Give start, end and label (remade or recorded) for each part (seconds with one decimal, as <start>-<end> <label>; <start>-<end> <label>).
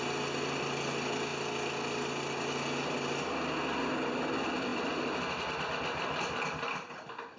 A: 0.0-7.4 recorded